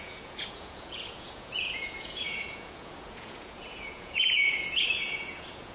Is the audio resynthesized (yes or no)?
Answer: yes